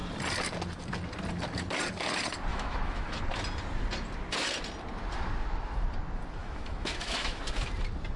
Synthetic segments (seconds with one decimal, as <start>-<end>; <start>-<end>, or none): 2.5-3.2; 6.4-7.4